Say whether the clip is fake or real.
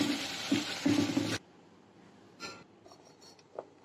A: real